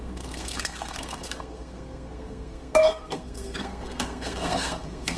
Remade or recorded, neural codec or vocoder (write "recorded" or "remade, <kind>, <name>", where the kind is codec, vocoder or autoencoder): remade, codec, SNAC